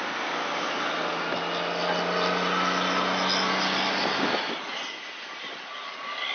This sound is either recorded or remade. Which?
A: recorded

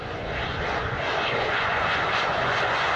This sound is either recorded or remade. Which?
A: remade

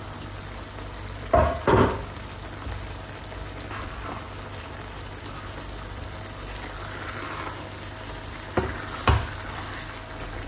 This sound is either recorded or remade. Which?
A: recorded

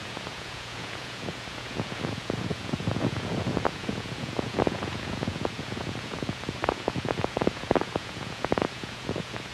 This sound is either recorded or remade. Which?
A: remade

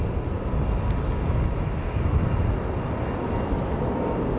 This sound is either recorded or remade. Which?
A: recorded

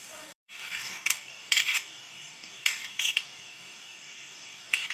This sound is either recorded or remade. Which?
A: remade